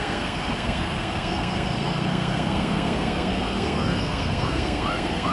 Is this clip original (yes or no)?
no